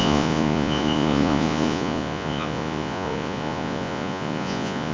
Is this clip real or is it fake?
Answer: fake